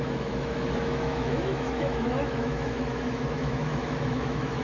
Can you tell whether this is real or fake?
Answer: fake